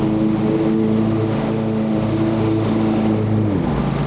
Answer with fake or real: real